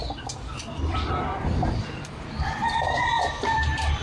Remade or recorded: remade